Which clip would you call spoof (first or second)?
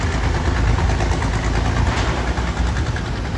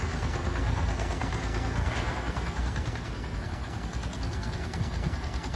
second